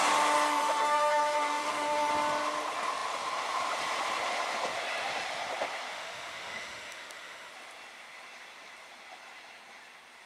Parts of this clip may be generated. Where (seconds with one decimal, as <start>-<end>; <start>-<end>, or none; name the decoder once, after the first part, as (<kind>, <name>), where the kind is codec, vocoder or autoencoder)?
0.5-2.1 (autoencoder, DAC-VAE); 5.9-7.5

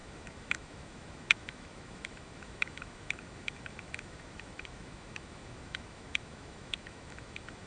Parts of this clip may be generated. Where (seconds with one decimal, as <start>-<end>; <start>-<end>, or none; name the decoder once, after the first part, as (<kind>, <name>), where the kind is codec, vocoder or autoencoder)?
0.0-7.7 (autoencoder, DAC-VAE)

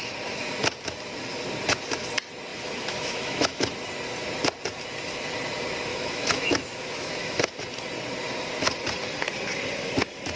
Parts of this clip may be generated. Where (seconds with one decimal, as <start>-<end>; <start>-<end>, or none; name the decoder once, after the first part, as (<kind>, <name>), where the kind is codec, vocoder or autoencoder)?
2.5-3.6 (autoencoder, DAC-VAE); 5.9-7.5

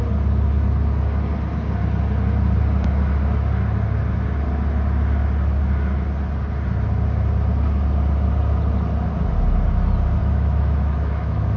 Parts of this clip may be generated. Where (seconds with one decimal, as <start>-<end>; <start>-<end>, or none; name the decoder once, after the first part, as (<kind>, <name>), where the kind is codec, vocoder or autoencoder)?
10.2-11.6 (autoencoder, DAC-VAE)

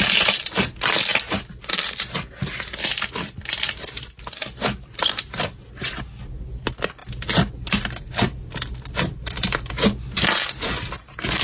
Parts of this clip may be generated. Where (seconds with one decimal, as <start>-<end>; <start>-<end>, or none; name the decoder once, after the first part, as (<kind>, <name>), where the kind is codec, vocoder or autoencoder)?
none

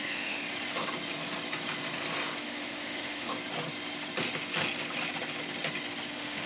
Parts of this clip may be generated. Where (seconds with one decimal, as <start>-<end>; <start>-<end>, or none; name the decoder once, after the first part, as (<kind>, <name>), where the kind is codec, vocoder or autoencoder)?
0.0-0.4 (autoencoder, DAC-VAE); 2.4-3.3; 6.1-6.5